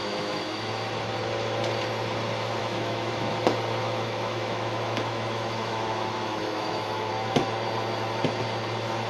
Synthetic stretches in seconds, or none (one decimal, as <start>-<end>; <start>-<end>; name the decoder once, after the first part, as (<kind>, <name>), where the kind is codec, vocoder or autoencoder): 0.0-0.7 (autoencoder, DAC-VAE); 2.6-3.3; 3.8-7.1

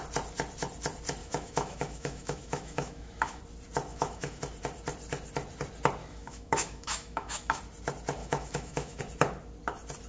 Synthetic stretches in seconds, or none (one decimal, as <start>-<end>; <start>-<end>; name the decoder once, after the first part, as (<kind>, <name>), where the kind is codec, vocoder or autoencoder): 1.2-3.4 (autoencoder, DAC-VAE); 3.9-4.4; 6.0-7.6; 8.2-9.0

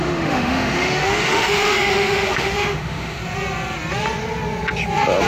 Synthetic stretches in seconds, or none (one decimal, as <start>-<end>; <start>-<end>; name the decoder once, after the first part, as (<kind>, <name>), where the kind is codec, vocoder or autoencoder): 0.0-3.2 (autoencoder, DAC-VAE)

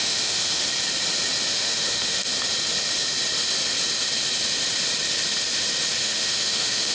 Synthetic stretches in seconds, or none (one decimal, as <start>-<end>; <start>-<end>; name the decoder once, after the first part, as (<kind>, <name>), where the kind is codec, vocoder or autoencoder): 0.0-0.6 (autoencoder, DAC-VAE); 1.5-2.3; 6.0-6.9

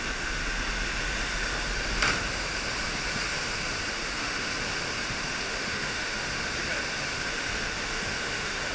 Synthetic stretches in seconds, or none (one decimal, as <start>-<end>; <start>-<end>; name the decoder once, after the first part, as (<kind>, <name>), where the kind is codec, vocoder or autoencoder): 0.0-0.4 (autoencoder, DAC-VAE); 4.0-4.5; 5.1-6.3; 7.1-8.7